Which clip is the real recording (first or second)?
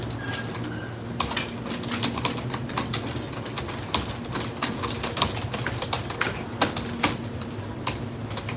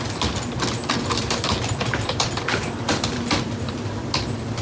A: first